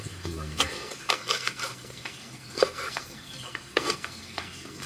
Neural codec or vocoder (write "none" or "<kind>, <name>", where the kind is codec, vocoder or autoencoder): codec, SNAC